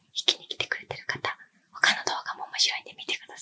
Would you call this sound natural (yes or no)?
yes